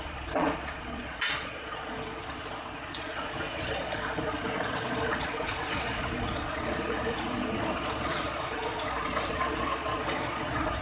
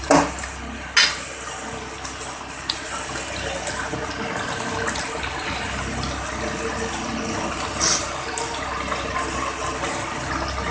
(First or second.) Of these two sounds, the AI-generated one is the first